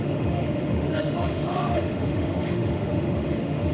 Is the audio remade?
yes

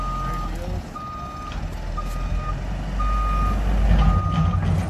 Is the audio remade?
no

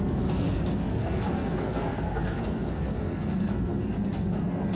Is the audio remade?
yes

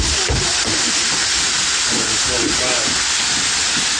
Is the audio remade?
no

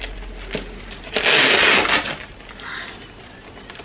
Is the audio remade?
no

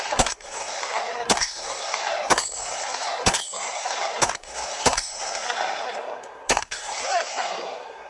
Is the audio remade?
yes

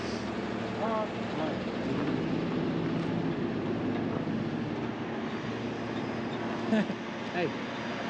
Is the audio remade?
no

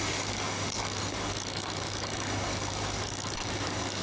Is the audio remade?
yes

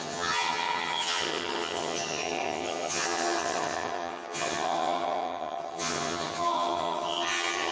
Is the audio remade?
yes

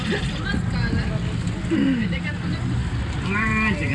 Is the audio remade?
no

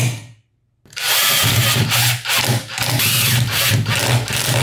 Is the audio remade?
no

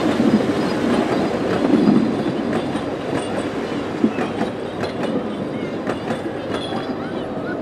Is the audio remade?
no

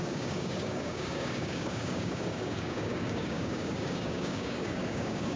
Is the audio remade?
yes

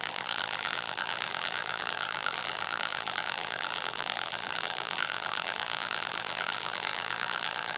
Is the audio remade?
yes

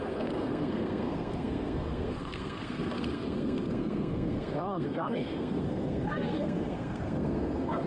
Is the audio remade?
yes